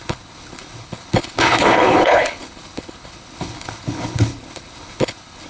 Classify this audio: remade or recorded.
remade